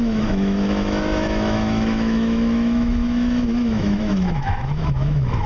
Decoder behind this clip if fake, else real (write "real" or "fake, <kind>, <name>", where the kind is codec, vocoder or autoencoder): fake, autoencoder, DAC-VAE